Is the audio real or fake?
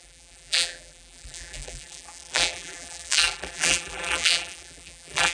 fake